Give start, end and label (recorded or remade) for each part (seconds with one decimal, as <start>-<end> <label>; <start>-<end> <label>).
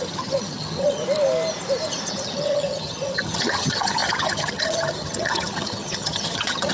0.0-1.0 remade; 1.0-2.1 recorded; 2.1-6.7 remade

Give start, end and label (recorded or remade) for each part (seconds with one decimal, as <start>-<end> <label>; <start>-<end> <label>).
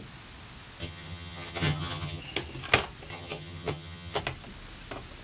0.0-0.8 recorded; 0.8-2.2 remade; 2.2-3.1 recorded; 3.1-4.2 remade; 4.2-5.2 recorded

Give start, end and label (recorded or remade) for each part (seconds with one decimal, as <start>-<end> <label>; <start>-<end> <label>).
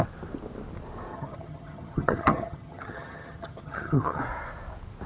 0.0-1.1 recorded; 1.1-4.2 remade; 4.2-5.1 recorded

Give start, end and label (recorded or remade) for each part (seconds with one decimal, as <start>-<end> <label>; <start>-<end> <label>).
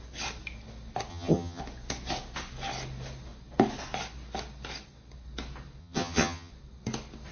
0.0-1.1 recorded; 1.1-1.6 remade; 1.6-5.8 recorded; 5.8-6.5 remade; 6.5-7.3 recorded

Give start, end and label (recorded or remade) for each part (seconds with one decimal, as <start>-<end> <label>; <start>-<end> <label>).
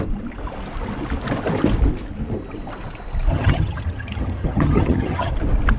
0.0-3.3 recorded; 3.3-5.3 remade; 5.3-5.8 recorded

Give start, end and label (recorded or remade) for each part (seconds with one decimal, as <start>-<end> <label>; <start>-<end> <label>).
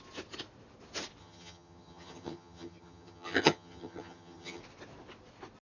0.0-1.2 recorded; 1.2-4.6 remade; 4.6-5.7 recorded